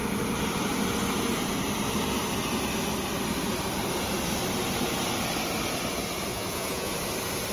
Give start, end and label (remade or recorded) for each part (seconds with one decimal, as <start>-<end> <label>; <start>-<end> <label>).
0.0-6.3 recorded; 6.3-6.9 remade; 6.9-7.5 recorded